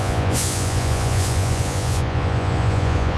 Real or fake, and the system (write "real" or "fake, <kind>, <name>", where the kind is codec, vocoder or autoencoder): fake, vocoder, Vocos